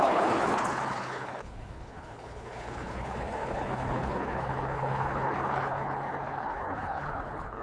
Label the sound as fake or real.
fake